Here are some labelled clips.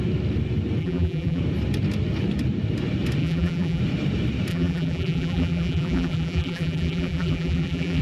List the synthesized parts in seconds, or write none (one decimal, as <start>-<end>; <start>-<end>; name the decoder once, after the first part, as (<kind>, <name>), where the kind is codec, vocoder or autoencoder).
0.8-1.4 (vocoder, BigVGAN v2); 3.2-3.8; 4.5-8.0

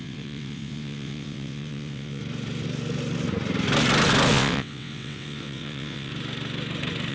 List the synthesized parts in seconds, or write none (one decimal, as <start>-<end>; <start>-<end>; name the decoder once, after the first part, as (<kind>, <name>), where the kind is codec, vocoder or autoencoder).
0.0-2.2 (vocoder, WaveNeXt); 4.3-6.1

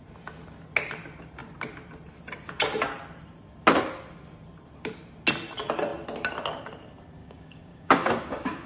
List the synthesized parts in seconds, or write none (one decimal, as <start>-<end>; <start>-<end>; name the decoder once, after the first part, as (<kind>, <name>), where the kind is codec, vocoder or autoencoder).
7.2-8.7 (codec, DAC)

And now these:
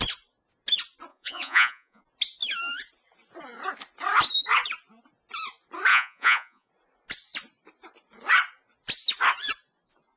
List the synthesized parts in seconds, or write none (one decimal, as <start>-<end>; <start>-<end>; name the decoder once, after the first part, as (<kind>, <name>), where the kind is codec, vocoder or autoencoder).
1.1-2.0 (vocoder, Vocos); 5.9-6.7